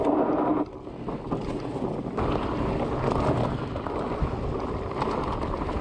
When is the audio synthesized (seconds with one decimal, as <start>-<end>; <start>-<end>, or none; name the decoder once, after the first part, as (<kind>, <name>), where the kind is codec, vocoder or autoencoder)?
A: none